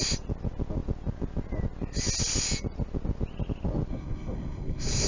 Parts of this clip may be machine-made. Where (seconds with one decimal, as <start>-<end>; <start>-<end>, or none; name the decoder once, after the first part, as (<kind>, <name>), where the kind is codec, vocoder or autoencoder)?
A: 3.9-5.1 (codec, SNAC)